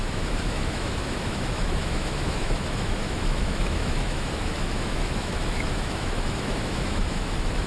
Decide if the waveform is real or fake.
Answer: fake